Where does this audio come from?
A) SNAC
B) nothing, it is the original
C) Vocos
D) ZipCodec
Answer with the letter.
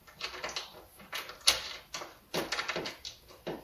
B